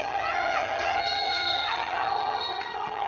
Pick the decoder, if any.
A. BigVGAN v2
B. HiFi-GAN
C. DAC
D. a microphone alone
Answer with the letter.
B